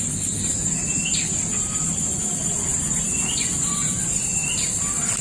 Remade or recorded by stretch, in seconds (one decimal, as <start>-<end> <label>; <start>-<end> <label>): 0.0-5.2 recorded

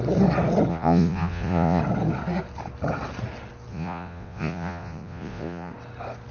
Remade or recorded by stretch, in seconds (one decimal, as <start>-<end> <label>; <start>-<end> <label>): 0.0-0.7 recorded; 0.7-1.8 remade; 1.8-3.7 recorded; 3.7-5.7 remade; 5.7-6.3 recorded

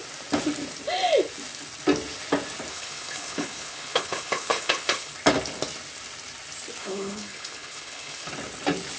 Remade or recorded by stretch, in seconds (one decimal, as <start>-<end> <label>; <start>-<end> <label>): 0.0-2.7 recorded; 2.7-5.1 remade; 5.1-6.8 recorded; 6.8-8.3 remade; 8.3-9.0 recorded